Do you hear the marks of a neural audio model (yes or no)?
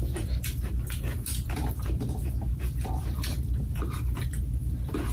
yes